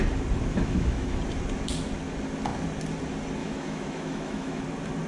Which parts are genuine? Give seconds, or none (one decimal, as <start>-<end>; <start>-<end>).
0.0-0.5; 1.2-3.4; 4.6-5.1